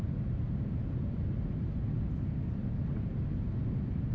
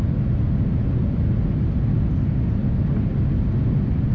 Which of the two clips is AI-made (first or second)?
first